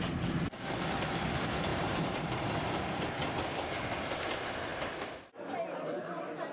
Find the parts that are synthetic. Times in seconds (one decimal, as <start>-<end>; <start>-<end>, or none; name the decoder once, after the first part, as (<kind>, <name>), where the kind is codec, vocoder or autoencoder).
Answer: 1.7-2.5 (vocoder, BigVGAN v2)